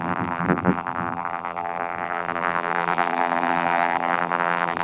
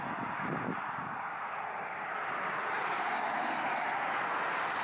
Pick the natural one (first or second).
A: second